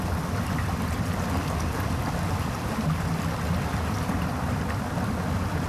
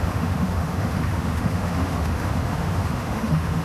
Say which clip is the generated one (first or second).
second